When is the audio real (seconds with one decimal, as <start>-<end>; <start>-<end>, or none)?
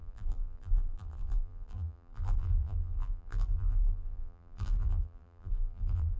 none